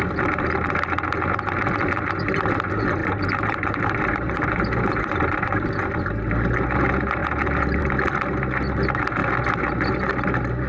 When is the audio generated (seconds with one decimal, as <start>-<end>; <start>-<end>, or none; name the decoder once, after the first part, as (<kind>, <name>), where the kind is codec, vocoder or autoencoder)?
3.0-5.7 (vocoder, BigVGAN v2); 7.2-7.8